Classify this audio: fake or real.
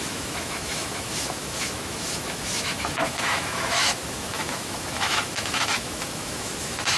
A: fake